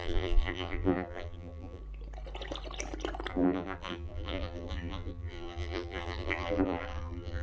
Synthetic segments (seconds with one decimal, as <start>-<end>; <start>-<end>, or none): 0.0-1.8; 3.3-7.4